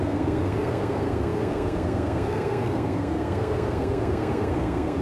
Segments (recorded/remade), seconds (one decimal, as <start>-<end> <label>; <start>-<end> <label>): 0.0-5.0 remade